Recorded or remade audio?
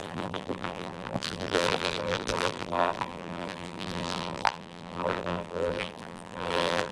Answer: remade